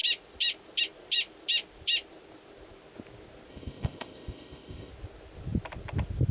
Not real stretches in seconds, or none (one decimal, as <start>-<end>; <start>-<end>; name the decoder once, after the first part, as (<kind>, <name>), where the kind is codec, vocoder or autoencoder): 3.5-4.9 (codec, ZipCodec)